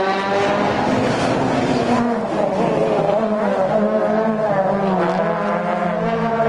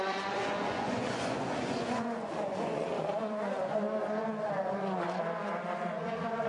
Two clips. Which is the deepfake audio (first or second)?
second